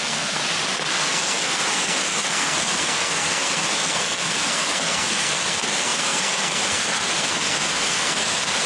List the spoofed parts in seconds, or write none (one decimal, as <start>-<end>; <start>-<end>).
0.0-0.4; 0.9-8.7